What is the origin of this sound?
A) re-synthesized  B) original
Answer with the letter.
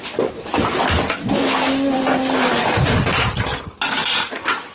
B